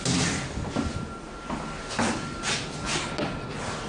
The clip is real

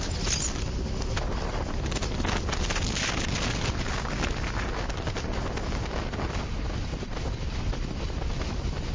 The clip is real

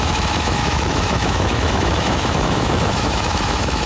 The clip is fake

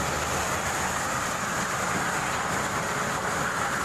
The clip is real